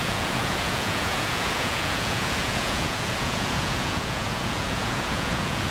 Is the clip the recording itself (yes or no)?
no